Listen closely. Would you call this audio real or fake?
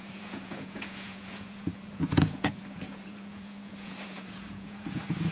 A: fake